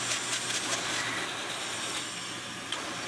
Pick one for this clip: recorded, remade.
recorded